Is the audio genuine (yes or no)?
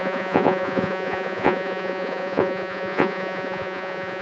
no